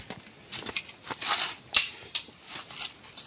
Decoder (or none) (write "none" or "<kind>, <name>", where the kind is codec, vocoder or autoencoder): none